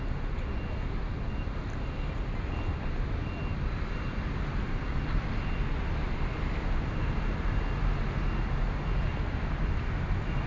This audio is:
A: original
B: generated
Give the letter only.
A